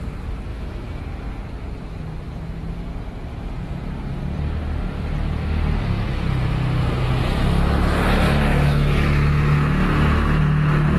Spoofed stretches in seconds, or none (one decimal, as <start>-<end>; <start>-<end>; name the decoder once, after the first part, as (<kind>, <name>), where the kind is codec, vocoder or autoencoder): 0.5-1.0 (autoencoder, DAC-VAE); 8.5-10.4